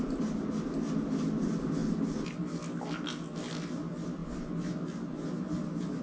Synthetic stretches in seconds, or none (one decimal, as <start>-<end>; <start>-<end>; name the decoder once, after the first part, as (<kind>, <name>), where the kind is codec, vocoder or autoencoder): none